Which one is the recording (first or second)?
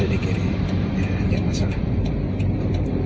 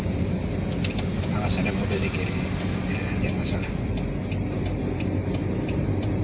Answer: second